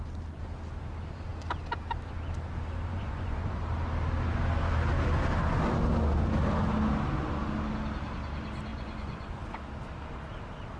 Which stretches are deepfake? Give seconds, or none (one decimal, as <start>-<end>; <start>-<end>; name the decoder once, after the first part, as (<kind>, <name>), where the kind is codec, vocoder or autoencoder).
2.9-3.6 (vocoder, Vocos); 8.7-9.4